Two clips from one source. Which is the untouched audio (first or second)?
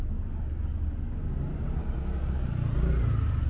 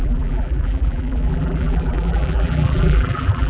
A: first